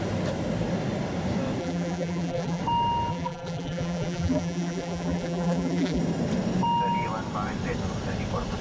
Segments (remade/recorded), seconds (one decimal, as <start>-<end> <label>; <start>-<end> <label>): 0.0-1.6 recorded; 1.6-2.6 remade; 2.6-3.1 recorded; 3.1-6.0 remade; 6.0-8.6 recorded